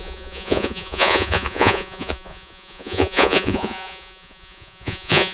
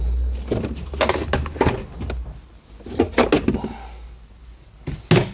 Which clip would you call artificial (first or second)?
first